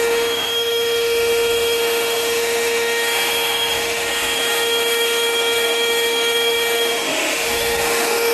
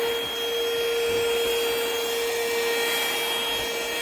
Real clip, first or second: second